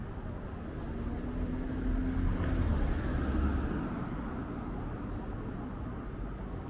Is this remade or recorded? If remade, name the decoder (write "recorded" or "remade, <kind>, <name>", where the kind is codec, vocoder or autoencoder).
recorded